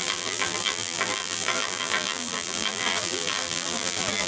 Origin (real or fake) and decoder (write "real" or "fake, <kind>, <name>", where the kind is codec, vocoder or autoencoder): fake, vocoder, BigVGAN v2